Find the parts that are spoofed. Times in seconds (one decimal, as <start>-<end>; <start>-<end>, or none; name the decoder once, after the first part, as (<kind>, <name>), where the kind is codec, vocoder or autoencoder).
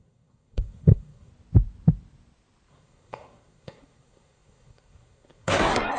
0.0-1.3 (codec, SNAC); 2.7-6.0